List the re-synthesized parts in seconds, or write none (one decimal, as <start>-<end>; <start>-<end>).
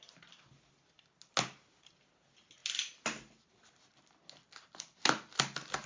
none